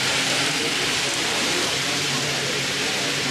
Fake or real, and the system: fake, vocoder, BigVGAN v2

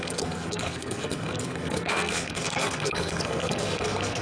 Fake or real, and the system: fake, codec, SNAC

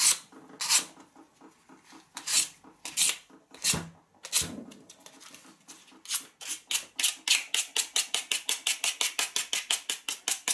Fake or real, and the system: real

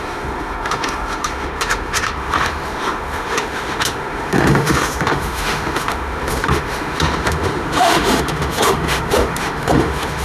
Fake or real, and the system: fake, autoencoder, DAC-VAE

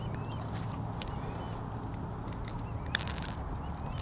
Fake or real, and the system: real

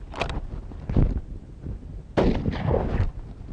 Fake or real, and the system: real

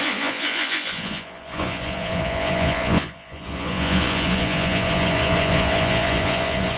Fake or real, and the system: fake, vocoder, Vocos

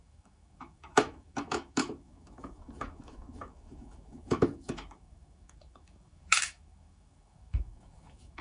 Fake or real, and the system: fake, autoencoder, DAC-VAE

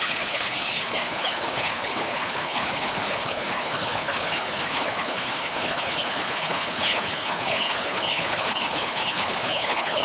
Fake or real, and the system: fake, codec, HILCodec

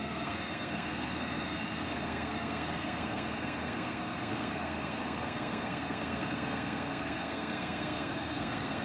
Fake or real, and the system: fake, codec, SNAC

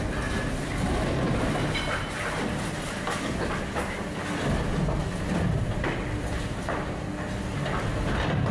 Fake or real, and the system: real